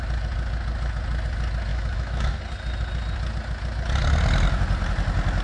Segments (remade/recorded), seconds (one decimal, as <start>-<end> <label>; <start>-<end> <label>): 0.0-1.7 recorded; 1.7-2.4 remade; 2.4-5.4 recorded